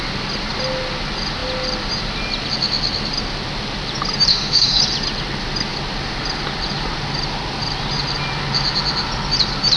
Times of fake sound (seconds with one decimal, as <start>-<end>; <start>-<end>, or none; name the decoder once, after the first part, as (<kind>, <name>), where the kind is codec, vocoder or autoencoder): 4.3-4.8 (autoencoder, DAC-VAE)